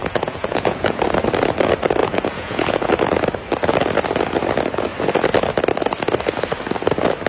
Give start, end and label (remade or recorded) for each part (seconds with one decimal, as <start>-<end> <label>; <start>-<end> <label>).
0.0-1.0 remade; 1.0-2.0 recorded; 2.0-2.9 remade; 2.9-7.3 recorded